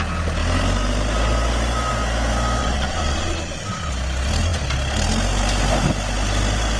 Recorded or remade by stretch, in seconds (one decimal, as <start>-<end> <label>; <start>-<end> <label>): 0.0-2.6 recorded; 2.6-3.9 remade; 3.9-6.8 recorded